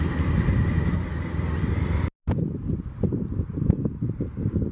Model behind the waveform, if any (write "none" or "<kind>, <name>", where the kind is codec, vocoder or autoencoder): none